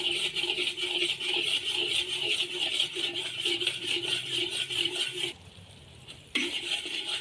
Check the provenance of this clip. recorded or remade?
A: remade